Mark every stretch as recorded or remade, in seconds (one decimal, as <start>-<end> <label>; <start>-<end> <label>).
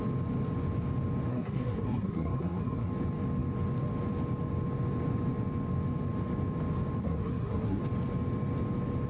0.0-1.3 recorded; 1.3-2.9 remade; 2.9-7.0 recorded; 7.0-7.8 remade; 7.8-9.1 recorded